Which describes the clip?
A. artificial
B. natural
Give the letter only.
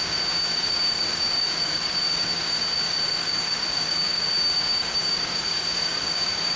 A